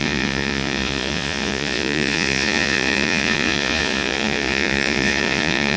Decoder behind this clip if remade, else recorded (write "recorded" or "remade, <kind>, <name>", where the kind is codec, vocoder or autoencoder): remade, vocoder, Vocos